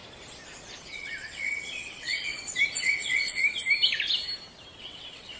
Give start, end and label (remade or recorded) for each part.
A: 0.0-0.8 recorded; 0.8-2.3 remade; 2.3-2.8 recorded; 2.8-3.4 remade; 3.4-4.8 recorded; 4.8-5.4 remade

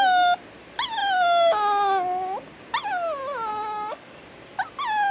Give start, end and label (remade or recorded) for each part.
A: 0.0-3.5 recorded; 3.5-4.2 remade; 4.2-5.1 recorded

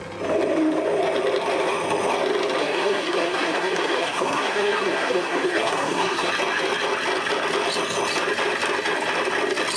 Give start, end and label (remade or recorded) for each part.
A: 0.0-2.6 recorded; 2.6-6.3 remade; 6.3-9.8 recorded

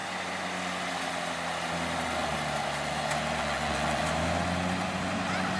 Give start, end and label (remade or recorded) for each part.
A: 0.0-3.4 recorded; 3.4-4.0 remade; 4.0-5.6 recorded